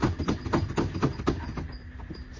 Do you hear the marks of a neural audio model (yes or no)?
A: no